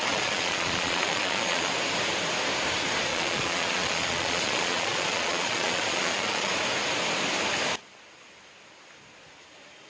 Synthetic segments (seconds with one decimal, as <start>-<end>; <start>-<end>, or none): 0.0-1.7; 3.1-6.5

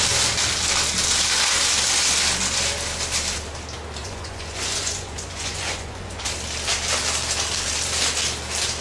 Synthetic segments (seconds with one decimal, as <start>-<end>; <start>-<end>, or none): 4.0-6.3

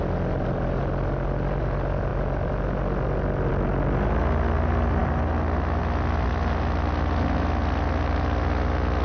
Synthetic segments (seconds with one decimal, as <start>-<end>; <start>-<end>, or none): none

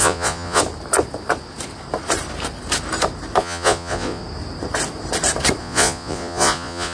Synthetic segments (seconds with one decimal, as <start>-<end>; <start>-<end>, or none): 0.0-0.6; 3.4-4.2; 5.6-6.9

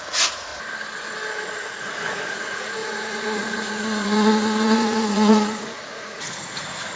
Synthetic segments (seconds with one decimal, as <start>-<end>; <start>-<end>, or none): 0.0-0.5; 1.6-7.0

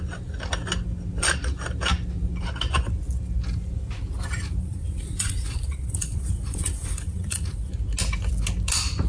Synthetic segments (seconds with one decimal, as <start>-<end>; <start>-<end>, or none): 4.6-7.7

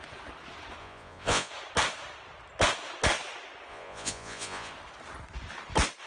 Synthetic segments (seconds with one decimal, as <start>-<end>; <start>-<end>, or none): 0.8-1.5; 3.7-4.7

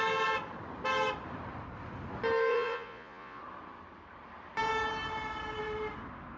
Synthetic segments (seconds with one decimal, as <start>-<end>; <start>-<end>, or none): 2.5-3.4